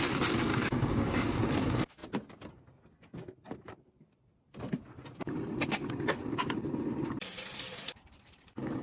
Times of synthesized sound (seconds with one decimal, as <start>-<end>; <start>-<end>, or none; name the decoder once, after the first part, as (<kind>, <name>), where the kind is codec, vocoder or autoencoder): 0.5-1.4 (codec, DAC)